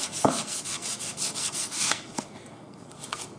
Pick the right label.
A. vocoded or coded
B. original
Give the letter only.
A